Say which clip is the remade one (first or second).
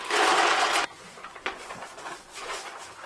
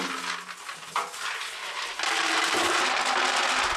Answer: first